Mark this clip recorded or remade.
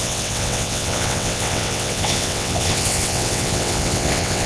remade